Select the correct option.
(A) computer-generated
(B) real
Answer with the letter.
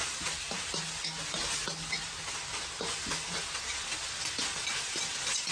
B